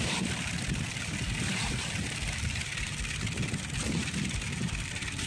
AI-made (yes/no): no